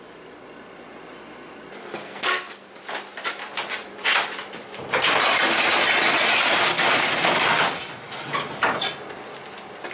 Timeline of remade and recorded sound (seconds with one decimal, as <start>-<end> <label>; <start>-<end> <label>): 0.0-2.0 recorded; 2.0-2.7 remade; 2.7-9.9 recorded